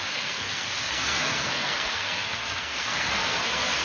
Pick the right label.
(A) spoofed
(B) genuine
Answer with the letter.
A